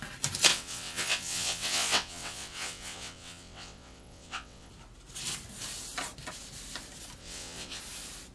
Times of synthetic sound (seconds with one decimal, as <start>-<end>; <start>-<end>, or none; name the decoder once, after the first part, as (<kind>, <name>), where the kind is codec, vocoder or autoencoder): 0.5-4.7 (vocoder, WaveNeXt); 7.2-7.8